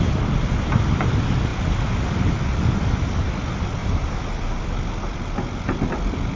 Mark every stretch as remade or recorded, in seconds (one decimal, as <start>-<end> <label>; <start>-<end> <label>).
0.0-3.8 recorded; 3.8-4.6 remade; 4.6-6.3 recorded